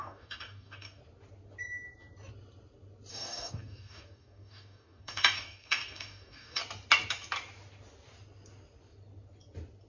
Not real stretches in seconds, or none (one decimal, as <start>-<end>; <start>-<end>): 0.0-1.0; 3.1-6.6